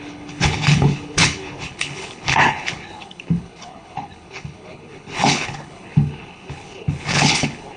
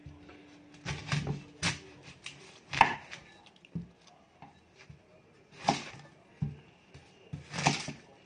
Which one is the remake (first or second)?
first